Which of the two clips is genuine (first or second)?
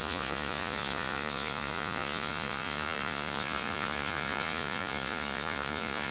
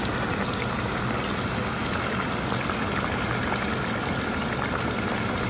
second